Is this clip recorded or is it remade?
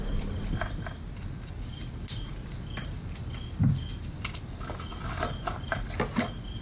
recorded